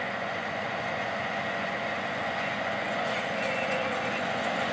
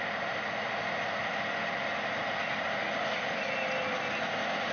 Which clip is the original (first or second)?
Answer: second